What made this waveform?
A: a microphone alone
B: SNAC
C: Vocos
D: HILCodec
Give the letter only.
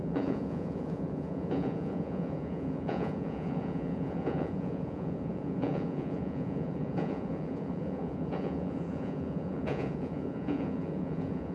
C